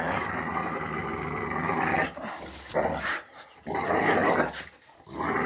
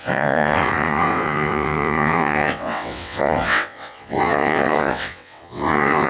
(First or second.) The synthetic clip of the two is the second